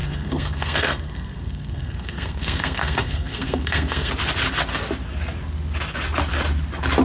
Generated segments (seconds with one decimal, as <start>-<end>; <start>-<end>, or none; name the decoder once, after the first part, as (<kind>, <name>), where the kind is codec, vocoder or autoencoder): 0.0-4.1 (codec, SNAC)